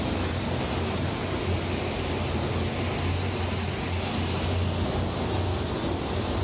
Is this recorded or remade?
recorded